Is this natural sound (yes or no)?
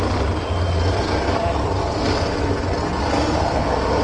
yes